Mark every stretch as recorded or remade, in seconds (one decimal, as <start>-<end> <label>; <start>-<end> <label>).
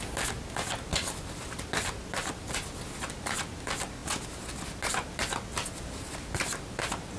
0.0-7.2 recorded